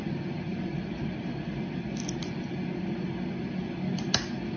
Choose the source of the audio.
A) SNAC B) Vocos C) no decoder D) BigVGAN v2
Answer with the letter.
C